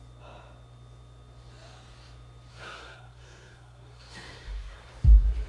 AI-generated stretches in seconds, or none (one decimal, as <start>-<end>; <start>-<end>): 2.5-4.9